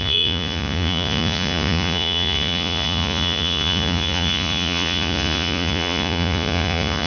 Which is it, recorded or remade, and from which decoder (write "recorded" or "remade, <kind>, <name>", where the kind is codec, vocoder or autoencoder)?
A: remade, vocoder, Vocos